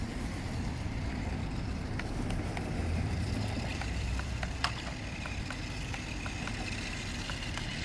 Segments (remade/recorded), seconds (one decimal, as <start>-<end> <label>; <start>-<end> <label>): 0.0-3.7 recorded; 3.7-4.3 remade; 4.3-7.8 recorded